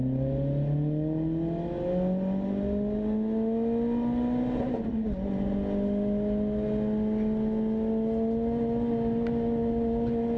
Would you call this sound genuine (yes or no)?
yes